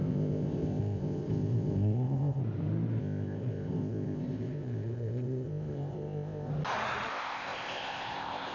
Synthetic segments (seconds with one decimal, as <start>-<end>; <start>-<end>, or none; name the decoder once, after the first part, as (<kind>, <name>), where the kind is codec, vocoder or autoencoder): 0.0-2.4 (codec, ZipCodec); 3.0-6.5; 7.1-8.5